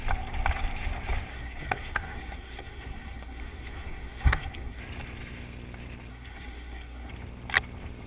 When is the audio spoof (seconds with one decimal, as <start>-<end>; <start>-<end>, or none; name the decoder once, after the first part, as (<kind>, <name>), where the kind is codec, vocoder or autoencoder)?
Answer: 1.3-4.8 (codec, SNAC); 6.1-7.1